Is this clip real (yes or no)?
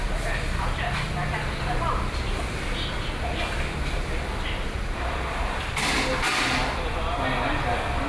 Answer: yes